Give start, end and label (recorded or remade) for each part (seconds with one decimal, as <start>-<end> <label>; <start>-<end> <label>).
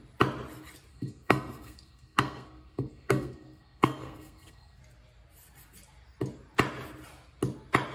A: 0.0-0.9 recorded; 0.9-4.8 remade; 4.8-7.9 recorded